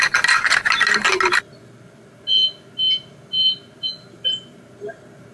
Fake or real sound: real